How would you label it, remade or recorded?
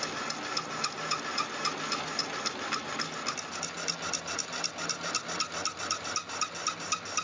recorded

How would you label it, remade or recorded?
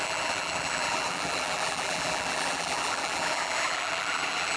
remade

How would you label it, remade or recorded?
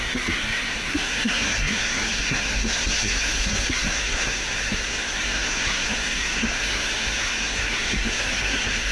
remade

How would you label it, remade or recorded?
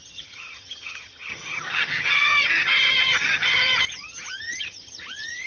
remade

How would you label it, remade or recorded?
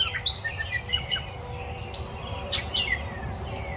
remade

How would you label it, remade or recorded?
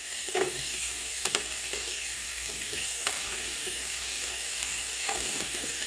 remade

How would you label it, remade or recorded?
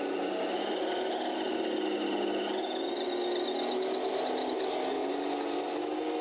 recorded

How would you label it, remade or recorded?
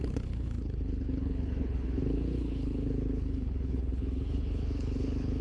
remade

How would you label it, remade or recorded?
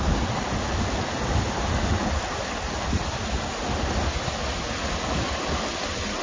recorded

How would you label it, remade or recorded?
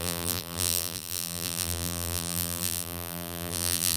remade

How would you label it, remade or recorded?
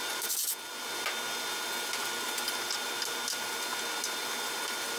recorded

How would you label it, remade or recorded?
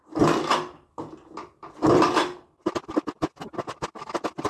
recorded